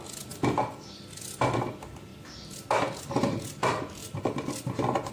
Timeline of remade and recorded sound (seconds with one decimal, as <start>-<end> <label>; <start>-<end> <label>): 0.0-2.1 remade; 2.1-3.0 recorded; 3.0-5.1 remade